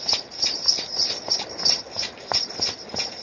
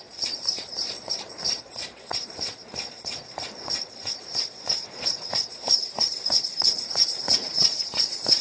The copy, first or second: second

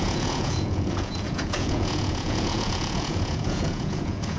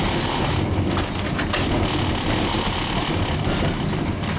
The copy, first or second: first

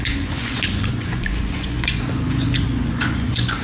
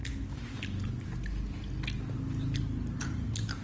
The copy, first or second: first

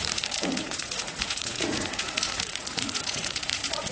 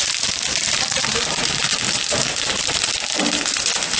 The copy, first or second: first